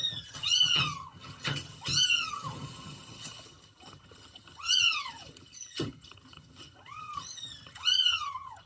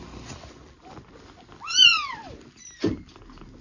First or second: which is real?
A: second